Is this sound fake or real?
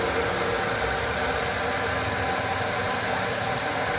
real